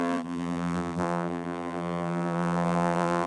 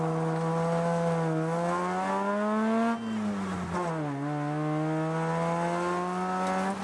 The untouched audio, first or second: second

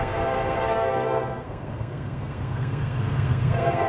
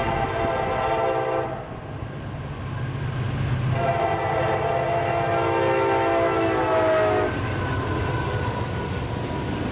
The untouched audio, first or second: second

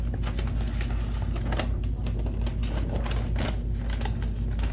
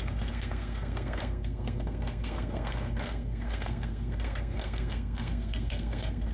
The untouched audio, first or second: first